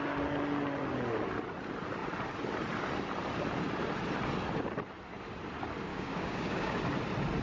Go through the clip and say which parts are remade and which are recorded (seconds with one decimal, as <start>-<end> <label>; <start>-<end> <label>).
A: 0.0-5.9 recorded; 5.9-6.8 remade; 6.8-7.4 recorded